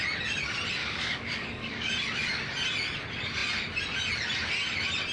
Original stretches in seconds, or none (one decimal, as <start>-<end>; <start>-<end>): 0.0-0.8; 1.9-5.1